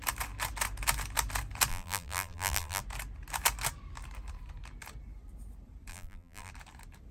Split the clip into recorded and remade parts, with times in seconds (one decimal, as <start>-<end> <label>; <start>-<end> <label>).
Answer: 0.0-1.7 recorded; 1.7-2.8 remade; 2.8-5.9 recorded; 5.9-6.5 remade; 6.5-7.1 recorded